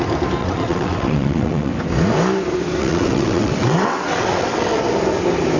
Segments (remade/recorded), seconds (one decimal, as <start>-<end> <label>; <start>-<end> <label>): 0.0-0.4 recorded; 0.4-1.7 remade; 1.7-2.8 recorded; 2.8-4.7 remade; 4.7-5.6 recorded